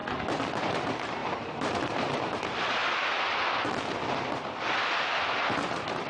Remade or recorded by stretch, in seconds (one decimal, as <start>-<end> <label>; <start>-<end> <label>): 0.0-0.6 recorded; 0.6-2.8 remade; 2.8-5.5 recorded; 5.5-6.1 remade